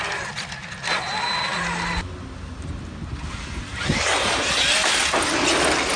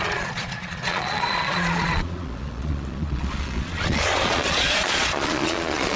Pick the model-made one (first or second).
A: second